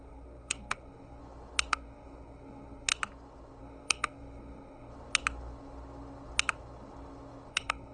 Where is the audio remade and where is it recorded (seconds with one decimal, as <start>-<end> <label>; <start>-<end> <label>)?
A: 0.0-1.2 remade; 1.2-1.7 recorded; 1.7-2.9 remade; 2.9-3.6 recorded; 3.6-4.9 remade; 4.9-7.5 recorded; 7.5-7.9 remade